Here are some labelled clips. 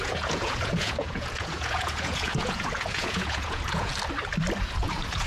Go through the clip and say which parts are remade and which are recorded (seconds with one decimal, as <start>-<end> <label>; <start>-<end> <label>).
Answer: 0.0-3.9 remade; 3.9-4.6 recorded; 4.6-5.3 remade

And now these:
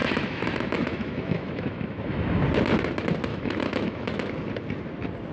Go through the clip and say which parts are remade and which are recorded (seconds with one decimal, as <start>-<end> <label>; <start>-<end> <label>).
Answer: 0.0-2.4 remade; 2.4-3.3 recorded; 3.3-4.3 remade; 4.3-5.3 recorded

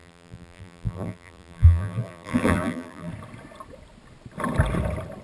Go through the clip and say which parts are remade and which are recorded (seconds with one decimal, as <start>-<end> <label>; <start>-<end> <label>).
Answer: 0.0-3.1 remade; 3.1-5.2 recorded

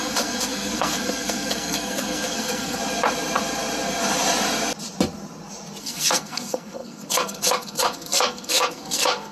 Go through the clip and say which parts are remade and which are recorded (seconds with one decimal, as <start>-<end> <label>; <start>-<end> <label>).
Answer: 0.0-2.8 remade; 2.8-5.8 recorded; 5.8-9.3 remade

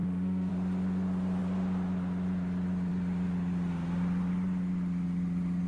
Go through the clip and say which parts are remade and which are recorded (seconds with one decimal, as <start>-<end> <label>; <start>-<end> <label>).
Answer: 0.0-0.5 remade; 0.5-5.7 recorded

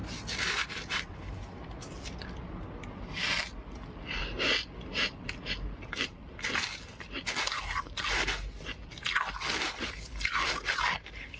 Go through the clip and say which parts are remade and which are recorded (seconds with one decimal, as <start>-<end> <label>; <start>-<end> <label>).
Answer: 0.0-11.4 recorded

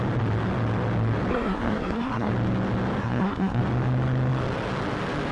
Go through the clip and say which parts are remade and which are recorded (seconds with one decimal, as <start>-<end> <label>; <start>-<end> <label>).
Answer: 0.0-1.3 recorded; 1.3-2.3 remade; 2.3-3.0 recorded; 3.0-3.6 remade; 3.6-5.3 recorded